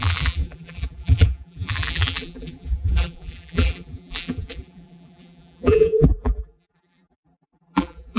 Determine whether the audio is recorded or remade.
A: remade